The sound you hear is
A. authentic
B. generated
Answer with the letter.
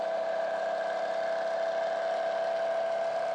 A